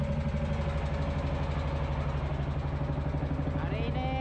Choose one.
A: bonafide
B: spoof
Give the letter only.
A